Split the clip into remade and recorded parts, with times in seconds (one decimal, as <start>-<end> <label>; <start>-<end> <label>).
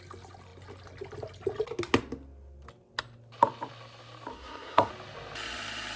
0.0-4.3 recorded; 4.3-4.9 remade; 4.9-6.0 recorded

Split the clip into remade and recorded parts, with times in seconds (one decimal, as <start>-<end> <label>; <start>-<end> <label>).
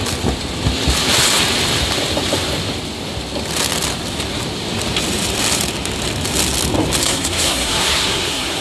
0.0-7.0 recorded; 7.0-8.6 remade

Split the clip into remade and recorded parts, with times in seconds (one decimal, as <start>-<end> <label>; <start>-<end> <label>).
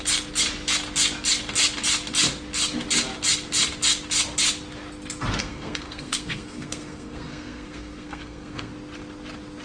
0.0-5.4 recorded; 5.4-8.7 remade; 8.7-9.6 recorded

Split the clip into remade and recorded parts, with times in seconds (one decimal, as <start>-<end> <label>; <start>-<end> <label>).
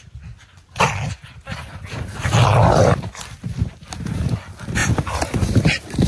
0.0-6.1 recorded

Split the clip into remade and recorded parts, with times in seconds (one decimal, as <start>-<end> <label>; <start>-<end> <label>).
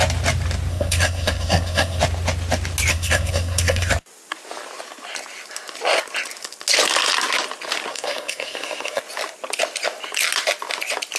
0.0-0.7 recorded; 0.7-2.0 remade; 2.0-2.9 recorded; 2.9-3.9 remade; 3.9-7.9 recorded; 7.9-9.0 remade; 9.0-11.2 recorded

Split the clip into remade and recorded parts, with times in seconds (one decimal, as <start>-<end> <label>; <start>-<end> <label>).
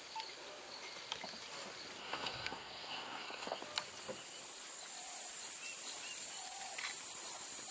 0.0-2.0 recorded; 2.0-3.6 remade; 3.6-7.7 recorded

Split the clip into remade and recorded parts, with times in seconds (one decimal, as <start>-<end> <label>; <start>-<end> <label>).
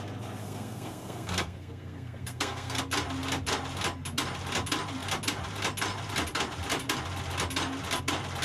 0.0-0.4 recorded; 0.4-2.8 remade; 2.8-8.4 recorded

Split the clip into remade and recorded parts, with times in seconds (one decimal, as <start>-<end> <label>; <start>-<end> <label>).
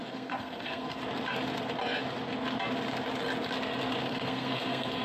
0.0-1.0 remade; 1.0-4.0 recorded; 4.0-5.0 remade